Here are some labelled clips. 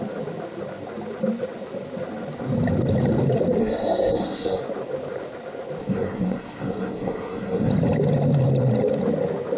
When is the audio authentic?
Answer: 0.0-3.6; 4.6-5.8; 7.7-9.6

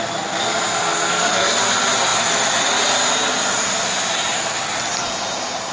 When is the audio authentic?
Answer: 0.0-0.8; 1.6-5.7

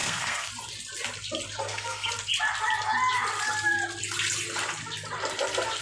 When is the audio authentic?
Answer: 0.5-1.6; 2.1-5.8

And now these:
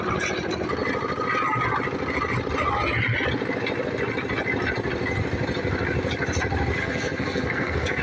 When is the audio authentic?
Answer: 0.0-6.8

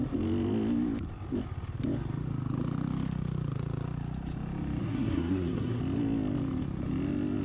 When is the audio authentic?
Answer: 0.0-4.8; 5.8-7.4

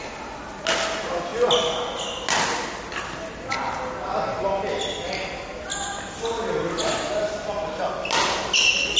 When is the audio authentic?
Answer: 0.0-9.0